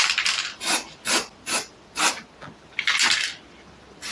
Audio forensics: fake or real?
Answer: real